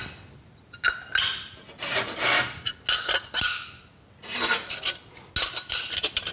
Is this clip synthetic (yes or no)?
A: no